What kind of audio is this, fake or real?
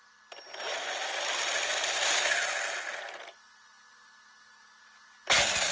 real